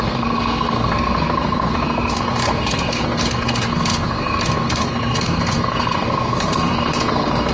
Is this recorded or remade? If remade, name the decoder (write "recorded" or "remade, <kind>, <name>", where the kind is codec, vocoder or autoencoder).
remade, codec, SNAC